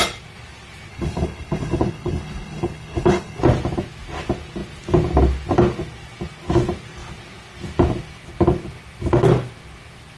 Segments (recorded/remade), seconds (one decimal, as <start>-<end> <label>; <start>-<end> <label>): 0.0-0.9 recorded; 0.9-3.4 remade; 3.4-10.2 recorded